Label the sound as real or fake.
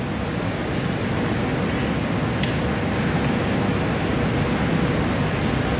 real